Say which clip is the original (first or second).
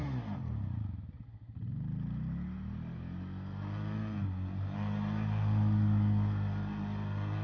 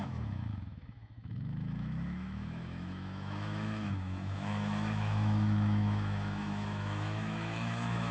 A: first